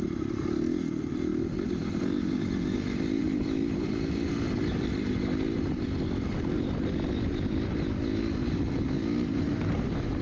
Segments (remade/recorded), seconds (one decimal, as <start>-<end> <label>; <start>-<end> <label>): 0.0-10.2 recorded